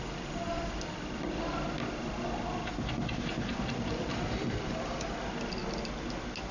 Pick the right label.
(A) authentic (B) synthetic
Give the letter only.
A